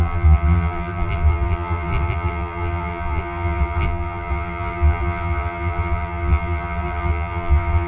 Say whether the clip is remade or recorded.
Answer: remade